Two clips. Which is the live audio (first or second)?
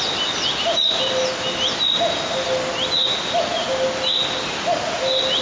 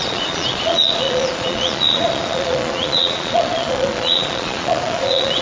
first